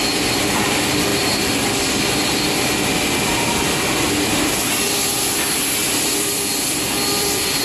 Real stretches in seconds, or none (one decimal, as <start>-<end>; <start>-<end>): 0.0-5.8